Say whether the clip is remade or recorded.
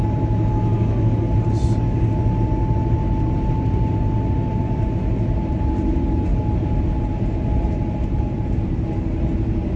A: recorded